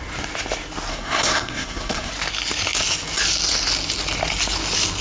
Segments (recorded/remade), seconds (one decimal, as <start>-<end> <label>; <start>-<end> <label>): 0.0-0.9 recorded; 0.9-2.1 remade; 2.1-5.0 recorded